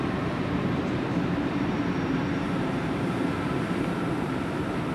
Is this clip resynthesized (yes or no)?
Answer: yes